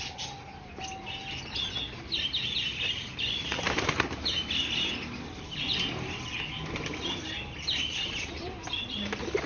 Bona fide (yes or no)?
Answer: yes